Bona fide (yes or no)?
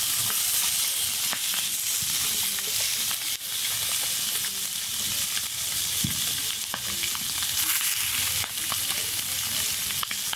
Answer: yes